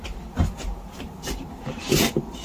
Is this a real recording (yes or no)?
yes